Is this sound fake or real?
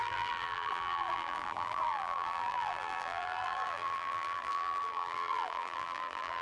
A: fake